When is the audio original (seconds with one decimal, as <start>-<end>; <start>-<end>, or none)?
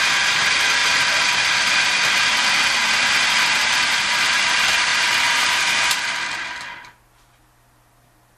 0.0-4.9; 6.0-8.4